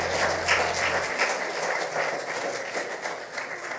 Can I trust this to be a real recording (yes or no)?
yes